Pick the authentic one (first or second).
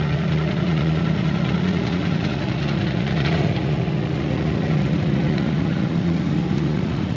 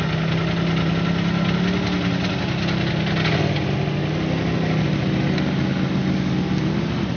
second